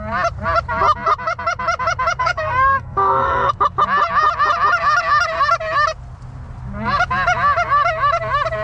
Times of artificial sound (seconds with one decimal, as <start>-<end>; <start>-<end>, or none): 2.2-3.5